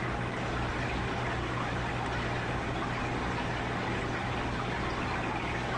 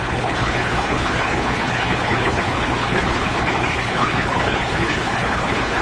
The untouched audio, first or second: first